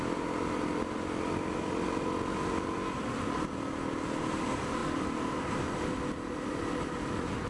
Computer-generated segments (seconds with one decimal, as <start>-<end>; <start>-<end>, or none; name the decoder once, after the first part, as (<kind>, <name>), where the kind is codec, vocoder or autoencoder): none